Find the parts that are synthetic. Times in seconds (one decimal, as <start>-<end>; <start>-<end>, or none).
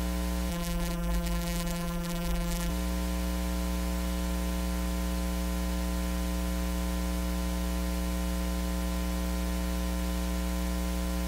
0.5-2.7